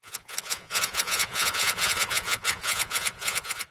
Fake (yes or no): yes